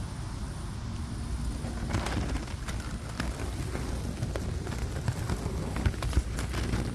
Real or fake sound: real